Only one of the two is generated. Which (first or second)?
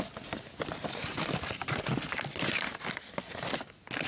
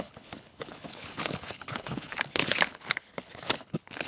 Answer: second